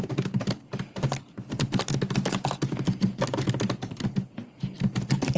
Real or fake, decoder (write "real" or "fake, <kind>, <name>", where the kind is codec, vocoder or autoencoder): real